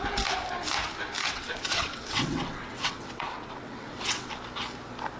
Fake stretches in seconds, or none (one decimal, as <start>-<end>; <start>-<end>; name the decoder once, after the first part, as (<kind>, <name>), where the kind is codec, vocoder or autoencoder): 1.2-4.3 (vocoder, WaveNeXt)